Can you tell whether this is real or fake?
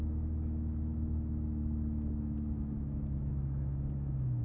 fake